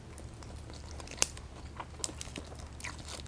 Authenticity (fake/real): real